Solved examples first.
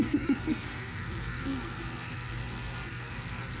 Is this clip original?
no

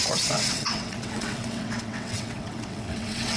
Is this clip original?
no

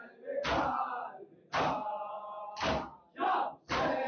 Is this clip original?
yes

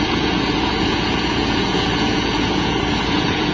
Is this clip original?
no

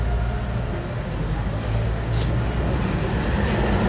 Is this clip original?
yes